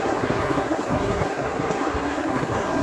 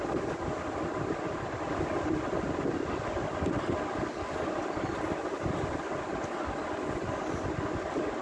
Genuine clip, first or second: second